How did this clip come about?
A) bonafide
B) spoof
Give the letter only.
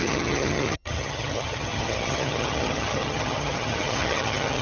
B